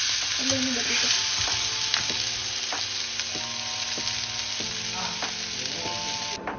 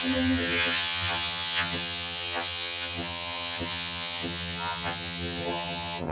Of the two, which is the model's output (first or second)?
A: second